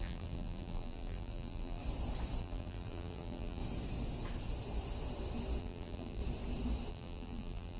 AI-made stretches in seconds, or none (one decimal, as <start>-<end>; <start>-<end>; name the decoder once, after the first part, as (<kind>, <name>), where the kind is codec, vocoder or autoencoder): 0.0-1.8 (vocoder, BigVGAN v2); 2.4-3.6; 5.6-6.2; 6.9-7.8